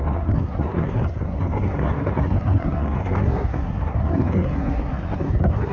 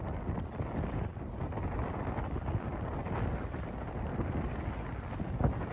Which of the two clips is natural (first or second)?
second